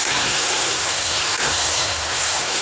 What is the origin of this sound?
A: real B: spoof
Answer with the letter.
B